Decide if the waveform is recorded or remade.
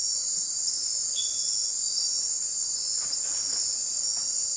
recorded